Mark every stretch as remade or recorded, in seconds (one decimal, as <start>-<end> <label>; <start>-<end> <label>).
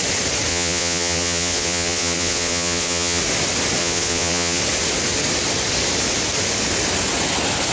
0.0-0.5 recorded; 0.5-3.2 remade; 3.2-3.8 recorded; 3.8-4.6 remade; 4.6-7.7 recorded